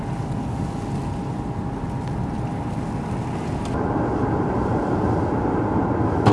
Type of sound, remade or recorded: recorded